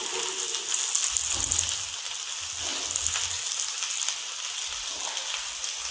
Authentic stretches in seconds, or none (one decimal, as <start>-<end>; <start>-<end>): 0.0-5.9